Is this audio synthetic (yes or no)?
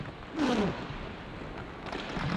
no